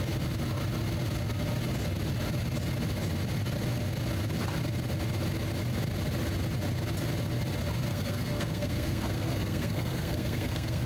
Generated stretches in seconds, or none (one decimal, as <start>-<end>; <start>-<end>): 7.9-10.9